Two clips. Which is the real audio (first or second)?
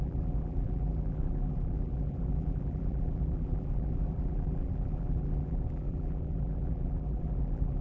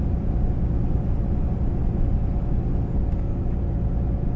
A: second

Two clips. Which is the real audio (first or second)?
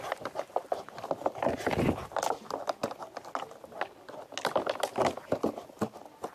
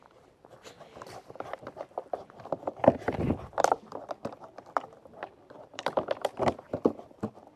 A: first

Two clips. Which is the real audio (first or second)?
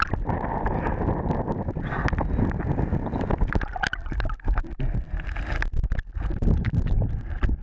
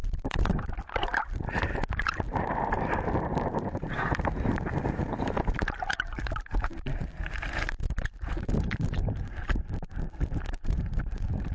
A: first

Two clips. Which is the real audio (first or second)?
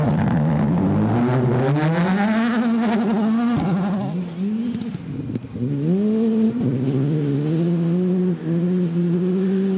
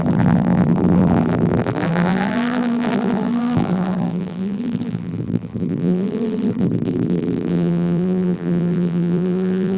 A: first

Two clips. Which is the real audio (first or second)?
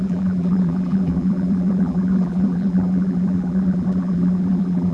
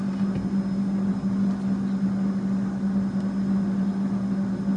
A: second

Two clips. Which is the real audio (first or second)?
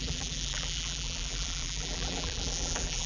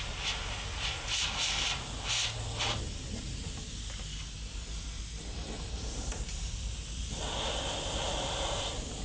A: second